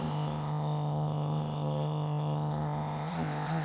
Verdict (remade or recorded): remade